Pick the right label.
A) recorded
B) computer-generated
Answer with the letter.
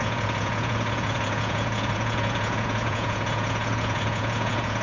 B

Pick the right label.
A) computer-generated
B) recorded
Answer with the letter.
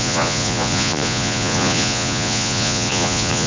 A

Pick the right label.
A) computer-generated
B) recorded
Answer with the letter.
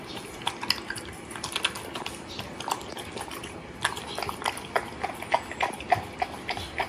B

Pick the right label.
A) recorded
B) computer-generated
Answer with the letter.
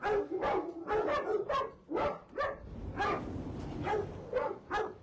A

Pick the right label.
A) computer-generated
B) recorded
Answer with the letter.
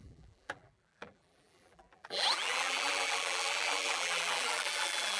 A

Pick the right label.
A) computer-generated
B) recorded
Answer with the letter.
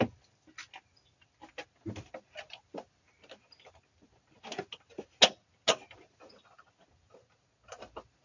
B